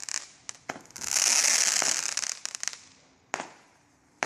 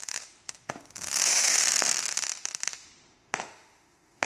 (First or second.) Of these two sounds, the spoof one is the second